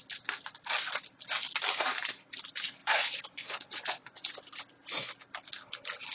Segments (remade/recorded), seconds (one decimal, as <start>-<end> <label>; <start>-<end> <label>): 0.0-2.8 recorded; 2.8-4.4 remade; 4.4-6.1 recorded